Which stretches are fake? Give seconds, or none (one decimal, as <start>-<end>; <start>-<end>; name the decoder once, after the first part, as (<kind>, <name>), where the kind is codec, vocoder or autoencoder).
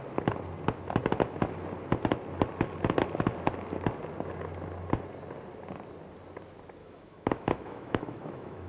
6.8-8.7 (autoencoder, DAC-VAE)